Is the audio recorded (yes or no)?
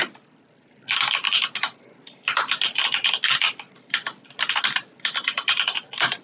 yes